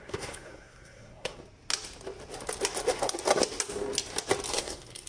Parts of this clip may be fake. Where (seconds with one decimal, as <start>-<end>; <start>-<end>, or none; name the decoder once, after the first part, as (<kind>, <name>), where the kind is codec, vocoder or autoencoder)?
0.0-1.4 (codec, SNAC); 4.5-5.1